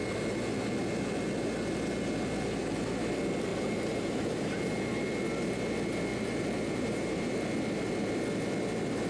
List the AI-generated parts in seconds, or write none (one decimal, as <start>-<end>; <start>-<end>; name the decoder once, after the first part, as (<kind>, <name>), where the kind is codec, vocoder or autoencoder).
3.5-5.1 (vocoder, BigVGAN v2); 6.1-7.3